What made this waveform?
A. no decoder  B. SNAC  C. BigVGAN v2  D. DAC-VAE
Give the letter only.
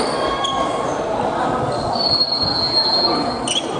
A